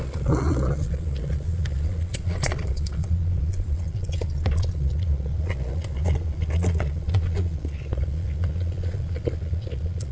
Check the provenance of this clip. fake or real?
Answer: fake